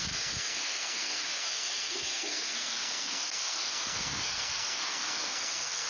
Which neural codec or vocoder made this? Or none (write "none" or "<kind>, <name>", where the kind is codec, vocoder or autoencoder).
codec, SNAC